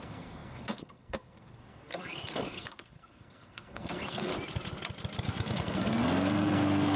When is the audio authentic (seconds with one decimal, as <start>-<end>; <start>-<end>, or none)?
4.3-5.2

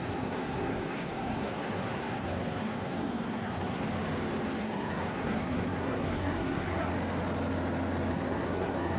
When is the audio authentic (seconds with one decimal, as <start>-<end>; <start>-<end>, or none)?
3.8-4.6; 6.9-8.1